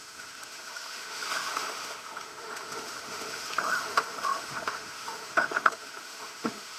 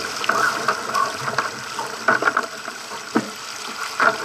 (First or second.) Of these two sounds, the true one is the second